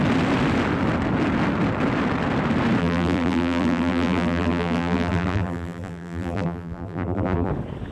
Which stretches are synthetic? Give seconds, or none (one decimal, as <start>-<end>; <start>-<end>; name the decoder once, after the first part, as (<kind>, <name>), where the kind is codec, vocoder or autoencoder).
2.8-7.5 (vocoder, BigVGAN v2)